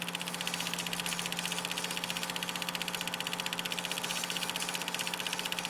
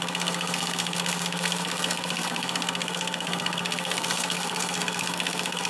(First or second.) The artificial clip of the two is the second